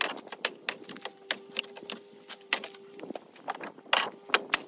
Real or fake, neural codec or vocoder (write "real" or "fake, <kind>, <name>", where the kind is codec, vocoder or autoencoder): real